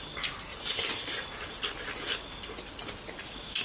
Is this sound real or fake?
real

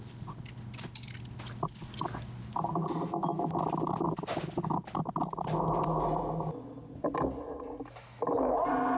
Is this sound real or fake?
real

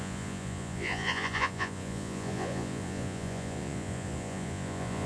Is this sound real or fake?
fake